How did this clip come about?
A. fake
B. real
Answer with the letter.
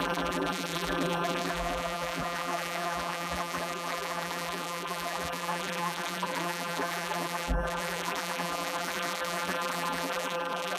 A